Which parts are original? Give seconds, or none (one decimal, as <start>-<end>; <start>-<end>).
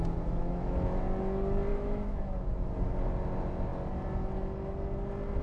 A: 0.0-0.4; 1.0-1.7; 2.7-5.4